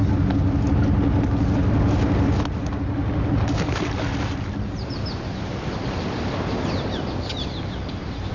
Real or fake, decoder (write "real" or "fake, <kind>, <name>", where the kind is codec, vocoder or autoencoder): real